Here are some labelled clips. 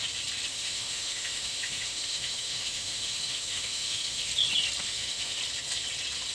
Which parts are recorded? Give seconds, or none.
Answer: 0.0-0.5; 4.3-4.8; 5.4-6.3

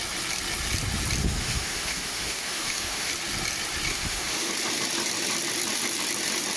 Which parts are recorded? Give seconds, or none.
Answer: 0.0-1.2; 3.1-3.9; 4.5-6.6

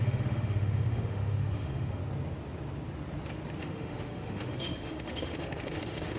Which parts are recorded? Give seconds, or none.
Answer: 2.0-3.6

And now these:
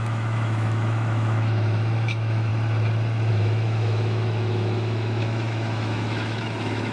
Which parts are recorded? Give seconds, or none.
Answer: 2.5-3.3

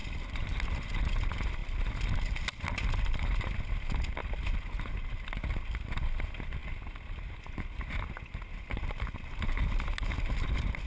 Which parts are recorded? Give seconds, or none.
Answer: 0.0-10.9

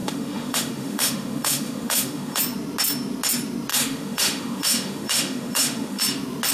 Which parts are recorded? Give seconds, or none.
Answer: 2.4-3.7; 6.0-6.5

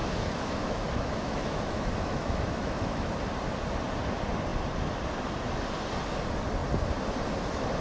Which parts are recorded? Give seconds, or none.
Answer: 3.1-7.8